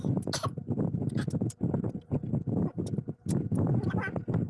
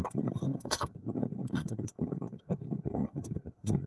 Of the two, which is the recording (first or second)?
first